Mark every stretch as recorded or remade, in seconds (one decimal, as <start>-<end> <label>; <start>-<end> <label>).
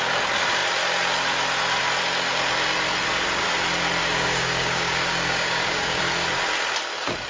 0.0-4.0 recorded; 4.0-6.0 remade; 6.0-7.3 recorded